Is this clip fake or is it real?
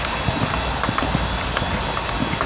real